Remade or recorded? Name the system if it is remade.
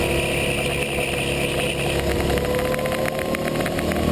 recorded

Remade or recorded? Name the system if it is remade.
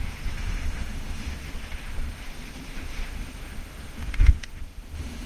remade, autoencoder, DAC-VAE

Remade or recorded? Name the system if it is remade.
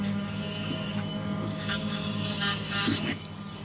remade, codec, DAC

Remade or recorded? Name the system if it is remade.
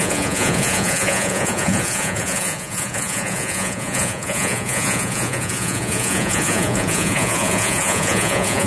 remade, vocoder, Vocos